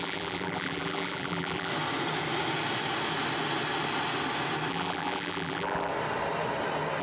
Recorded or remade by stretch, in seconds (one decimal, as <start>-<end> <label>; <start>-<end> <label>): 0.0-1.7 remade; 1.7-4.7 recorded; 4.7-5.9 remade; 5.9-7.0 recorded